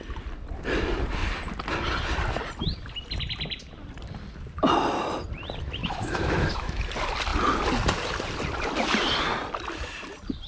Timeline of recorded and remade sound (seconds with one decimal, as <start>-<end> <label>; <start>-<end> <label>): 0.0-5.8 recorded; 5.8-6.8 remade; 6.8-10.5 recorded